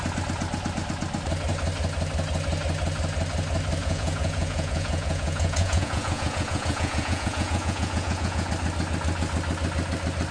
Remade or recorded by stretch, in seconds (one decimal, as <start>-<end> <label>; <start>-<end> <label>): 0.0-3.8 recorded; 3.8-8.5 remade; 8.5-10.3 recorded